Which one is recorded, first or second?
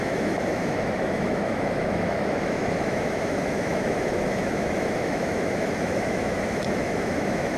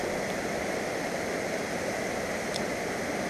second